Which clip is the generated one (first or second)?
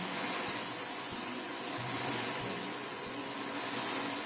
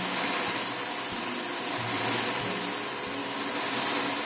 first